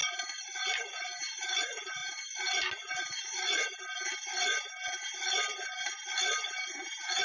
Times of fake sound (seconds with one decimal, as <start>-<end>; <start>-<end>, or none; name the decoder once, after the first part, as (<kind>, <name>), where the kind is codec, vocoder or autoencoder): none